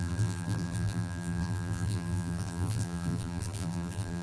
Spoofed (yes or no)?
yes